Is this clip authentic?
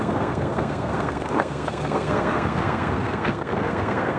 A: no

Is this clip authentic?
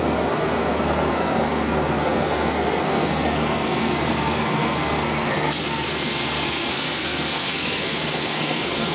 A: no